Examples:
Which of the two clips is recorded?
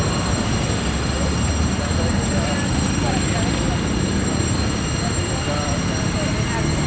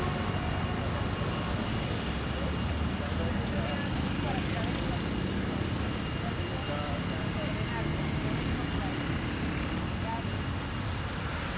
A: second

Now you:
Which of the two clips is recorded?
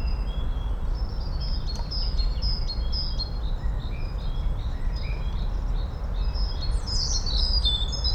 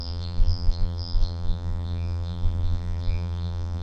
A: first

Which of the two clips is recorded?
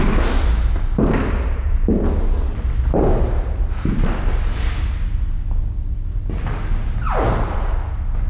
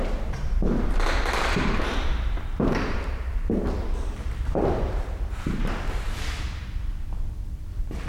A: first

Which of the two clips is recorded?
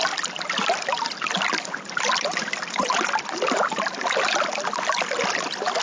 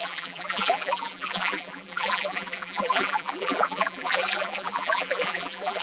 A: first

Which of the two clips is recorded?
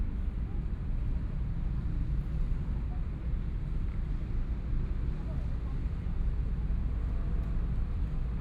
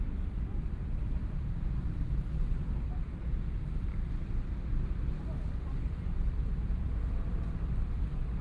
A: first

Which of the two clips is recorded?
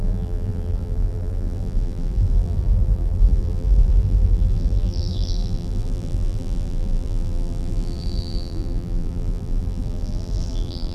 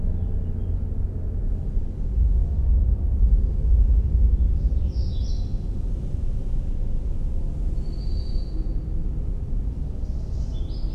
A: second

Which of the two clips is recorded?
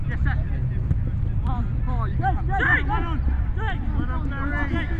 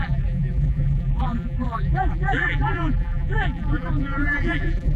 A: first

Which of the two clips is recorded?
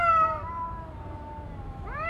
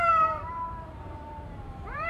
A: first